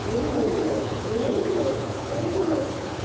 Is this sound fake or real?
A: fake